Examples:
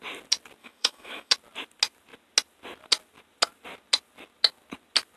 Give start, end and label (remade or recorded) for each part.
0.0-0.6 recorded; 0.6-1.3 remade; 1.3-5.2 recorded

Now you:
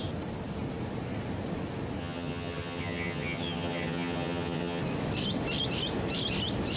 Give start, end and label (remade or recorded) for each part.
0.0-2.0 recorded; 2.0-4.8 remade; 4.8-6.8 recorded